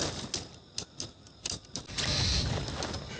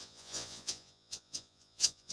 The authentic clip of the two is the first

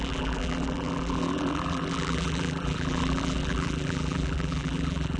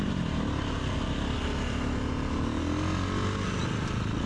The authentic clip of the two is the second